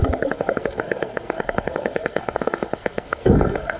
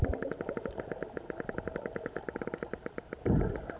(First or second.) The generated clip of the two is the first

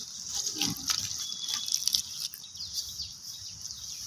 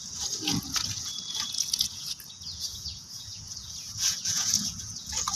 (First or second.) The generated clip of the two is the second